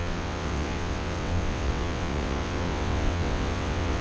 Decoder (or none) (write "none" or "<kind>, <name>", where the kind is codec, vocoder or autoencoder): vocoder, WaveNeXt